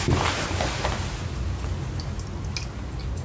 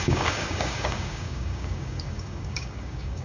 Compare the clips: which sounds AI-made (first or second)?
second